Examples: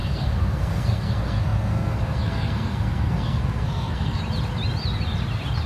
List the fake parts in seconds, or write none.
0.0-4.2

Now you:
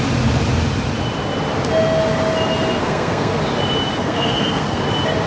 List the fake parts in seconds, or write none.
2.8-3.3; 4.0-4.8